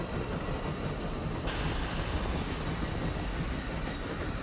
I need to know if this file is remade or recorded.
recorded